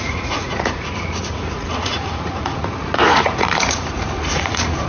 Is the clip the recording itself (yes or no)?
no